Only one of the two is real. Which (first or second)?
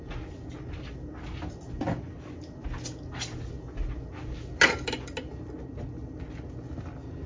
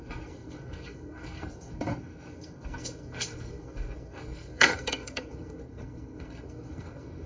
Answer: first